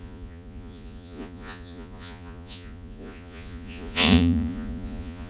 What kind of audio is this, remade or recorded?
remade